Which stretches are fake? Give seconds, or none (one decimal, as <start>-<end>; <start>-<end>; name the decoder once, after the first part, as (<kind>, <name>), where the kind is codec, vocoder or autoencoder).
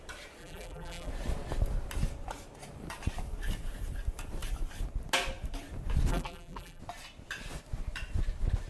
0.4-1.1 (vocoder, BigVGAN v2); 6.1-6.8